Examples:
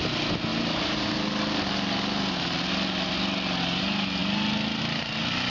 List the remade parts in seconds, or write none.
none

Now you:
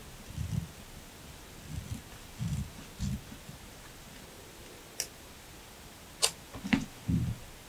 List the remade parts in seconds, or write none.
none

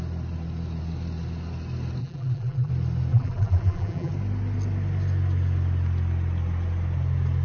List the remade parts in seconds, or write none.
2.0-2.7 (vocoder, BigVGAN v2); 3.1-4.1

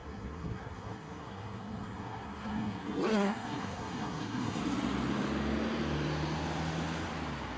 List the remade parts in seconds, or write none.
0.0-4.6 (codec, SNAC)

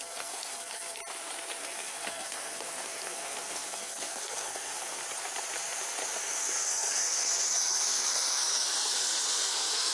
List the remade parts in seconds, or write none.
0.0-1.0 (codec, SNAC); 1.6-5.0; 6.2-9.9

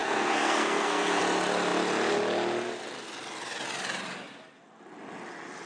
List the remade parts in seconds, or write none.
0.0-1.2 (codec, SNAC)

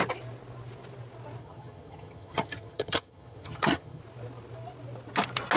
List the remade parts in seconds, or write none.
1.4-4.0 (vocoder, HiFi-GAN)